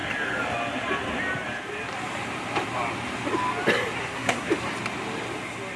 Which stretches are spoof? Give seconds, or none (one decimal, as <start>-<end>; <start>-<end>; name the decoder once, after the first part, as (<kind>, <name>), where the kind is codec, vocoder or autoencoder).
4.0-4.5 (codec, SNAC)